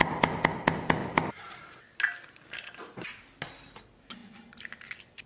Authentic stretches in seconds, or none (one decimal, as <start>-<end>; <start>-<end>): 0.0-5.3